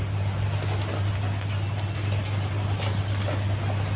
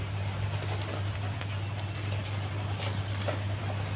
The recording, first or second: first